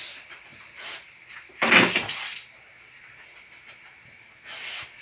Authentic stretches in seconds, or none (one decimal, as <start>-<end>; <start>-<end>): 0.0-5.0